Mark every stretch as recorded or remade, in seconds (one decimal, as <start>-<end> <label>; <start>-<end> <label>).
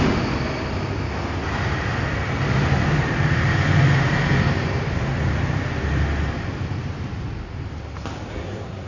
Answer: 0.0-8.3 recorded; 8.3-8.9 remade